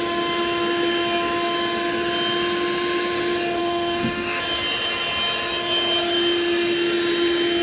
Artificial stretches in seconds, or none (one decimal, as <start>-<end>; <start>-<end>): 3.6-4.4

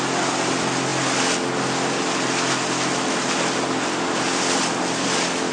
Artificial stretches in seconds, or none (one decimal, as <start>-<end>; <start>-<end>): none

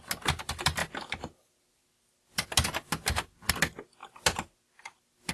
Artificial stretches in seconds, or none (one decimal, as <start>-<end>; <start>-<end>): none

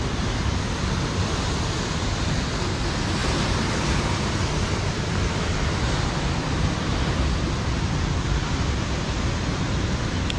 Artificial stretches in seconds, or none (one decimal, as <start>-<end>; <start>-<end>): none

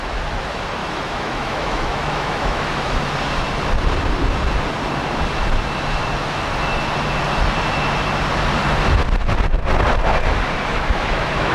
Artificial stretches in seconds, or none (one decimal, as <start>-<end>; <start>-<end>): 0.8-3.0; 10.7-11.5

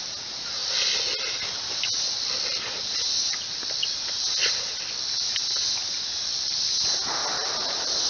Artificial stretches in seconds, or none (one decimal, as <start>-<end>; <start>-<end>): 7.2-8.1

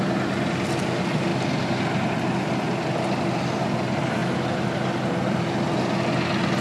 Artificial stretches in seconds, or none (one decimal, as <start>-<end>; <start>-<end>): none

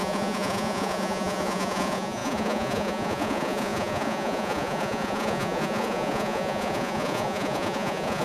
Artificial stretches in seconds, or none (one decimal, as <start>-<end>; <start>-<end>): 0.0-8.2